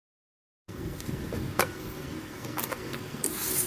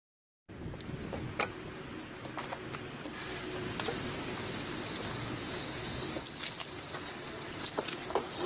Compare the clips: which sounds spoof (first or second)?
first